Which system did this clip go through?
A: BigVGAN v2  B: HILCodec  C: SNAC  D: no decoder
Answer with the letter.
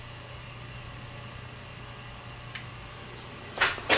D